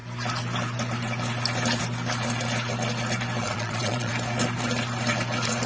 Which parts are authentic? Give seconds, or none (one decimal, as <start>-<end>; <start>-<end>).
0.0-3.4; 4.1-5.7